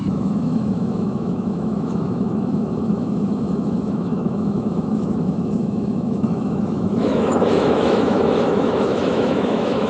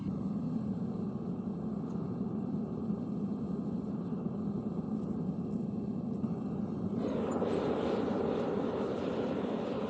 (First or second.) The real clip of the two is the second